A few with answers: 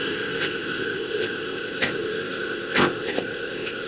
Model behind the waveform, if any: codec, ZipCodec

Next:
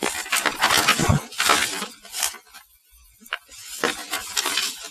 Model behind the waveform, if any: none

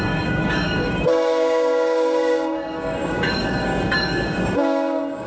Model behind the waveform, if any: codec, DAC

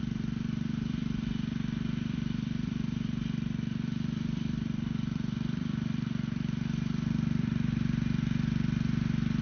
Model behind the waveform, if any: vocoder, BigVGAN v2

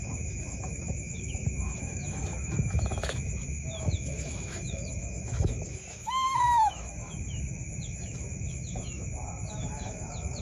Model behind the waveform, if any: autoencoder, DAC-VAE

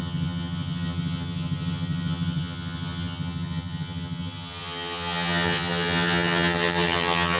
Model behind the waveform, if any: vocoder, HiFi-GAN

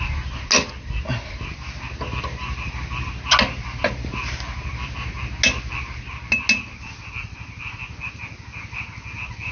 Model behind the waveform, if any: none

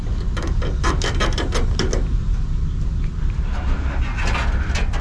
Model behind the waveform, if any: none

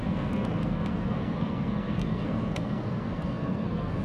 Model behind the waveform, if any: codec, SNAC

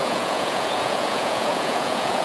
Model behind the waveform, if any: vocoder, Vocos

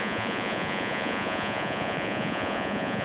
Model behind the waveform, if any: vocoder, Vocos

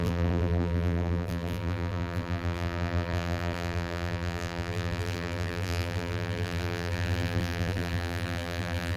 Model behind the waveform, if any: vocoder, BigVGAN v2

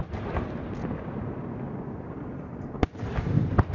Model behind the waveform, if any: none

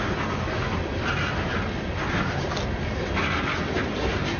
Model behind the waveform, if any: none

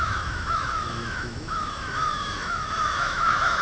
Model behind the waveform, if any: autoencoder, DAC-VAE